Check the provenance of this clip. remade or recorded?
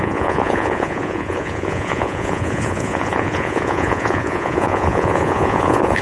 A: remade